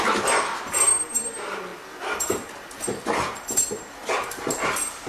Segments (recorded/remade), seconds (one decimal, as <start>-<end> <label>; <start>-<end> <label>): 0.0-5.1 recorded

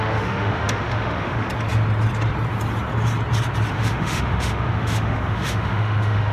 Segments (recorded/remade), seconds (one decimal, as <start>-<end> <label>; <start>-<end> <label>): 0.0-1.5 remade; 1.5-3.7 recorded; 3.7-6.3 remade

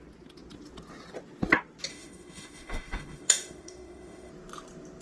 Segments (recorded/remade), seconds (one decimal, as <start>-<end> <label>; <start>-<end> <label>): 0.0-1.9 recorded; 1.9-4.3 remade; 4.3-5.0 recorded

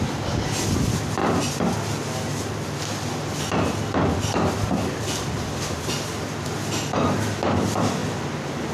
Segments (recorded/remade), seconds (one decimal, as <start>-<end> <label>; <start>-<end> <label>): 0.0-8.7 recorded

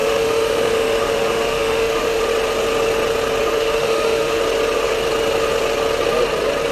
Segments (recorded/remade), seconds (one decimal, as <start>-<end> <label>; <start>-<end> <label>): 0.0-2.2 remade; 2.2-3.4 recorded; 3.4-4.4 remade; 4.4-6.7 recorded

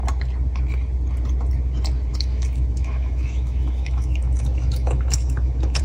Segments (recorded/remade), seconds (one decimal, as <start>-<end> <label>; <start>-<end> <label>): 0.0-2.1 recorded; 2.1-5.8 remade